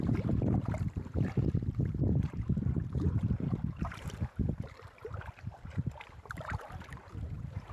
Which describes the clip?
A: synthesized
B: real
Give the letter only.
A